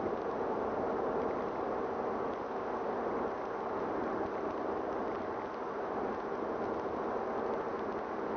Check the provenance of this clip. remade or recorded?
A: recorded